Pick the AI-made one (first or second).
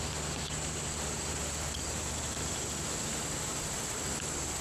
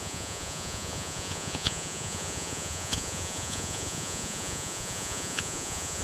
second